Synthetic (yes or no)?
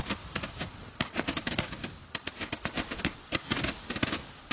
no